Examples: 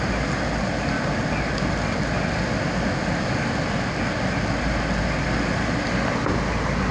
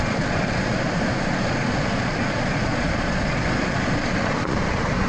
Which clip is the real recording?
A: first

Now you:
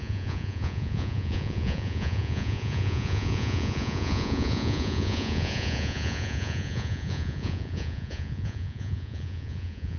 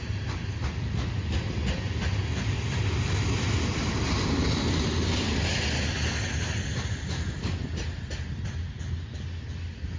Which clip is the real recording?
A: second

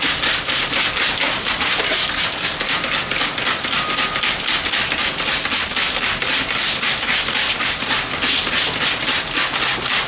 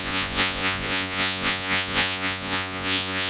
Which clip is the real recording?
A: first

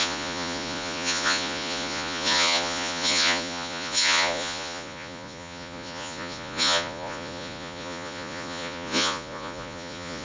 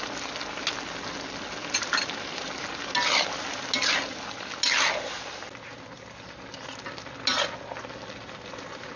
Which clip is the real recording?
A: second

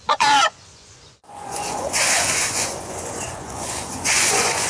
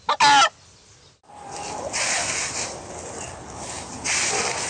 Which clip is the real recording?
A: second